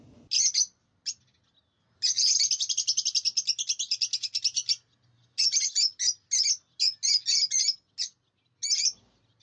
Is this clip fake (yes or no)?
no